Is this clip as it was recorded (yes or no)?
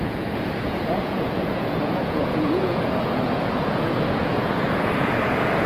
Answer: no